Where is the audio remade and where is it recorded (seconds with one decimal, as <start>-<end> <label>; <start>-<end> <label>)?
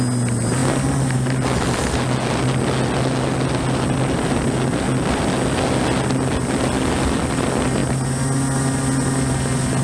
0.0-9.8 recorded